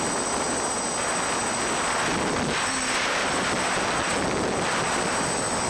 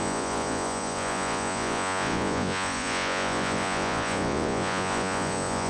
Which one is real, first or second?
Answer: first